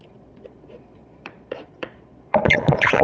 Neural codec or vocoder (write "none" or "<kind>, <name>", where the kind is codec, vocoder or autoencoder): vocoder, Vocos